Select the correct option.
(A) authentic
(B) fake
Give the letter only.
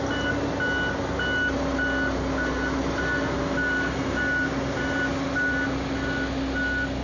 A